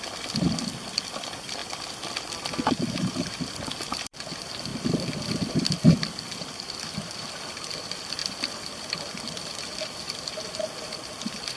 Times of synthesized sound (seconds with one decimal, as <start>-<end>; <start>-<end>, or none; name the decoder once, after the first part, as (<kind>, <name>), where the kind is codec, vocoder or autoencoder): 0.0-1.6 (vocoder, BigVGAN v2); 2.7-11.6